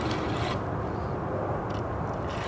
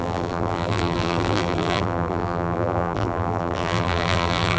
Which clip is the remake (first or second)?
second